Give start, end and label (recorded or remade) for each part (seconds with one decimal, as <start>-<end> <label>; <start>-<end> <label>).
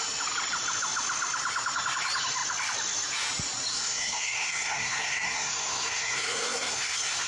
0.0-3.7 recorded; 3.7-7.3 remade